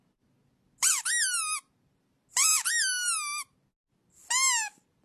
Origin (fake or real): real